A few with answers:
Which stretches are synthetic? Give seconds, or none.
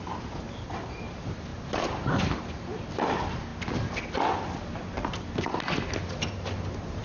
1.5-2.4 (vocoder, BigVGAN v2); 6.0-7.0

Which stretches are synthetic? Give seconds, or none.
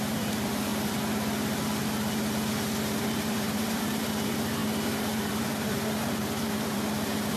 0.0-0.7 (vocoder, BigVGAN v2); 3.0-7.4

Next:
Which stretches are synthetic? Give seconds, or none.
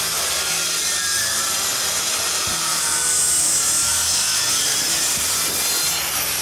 2.7-3.5 (vocoder, BigVGAN v2); 4.7-5.4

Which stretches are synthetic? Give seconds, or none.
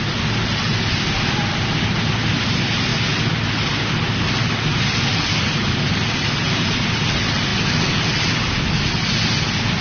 none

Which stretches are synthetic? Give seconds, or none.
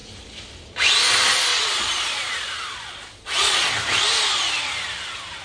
1.5-3.7 (vocoder, Vocos)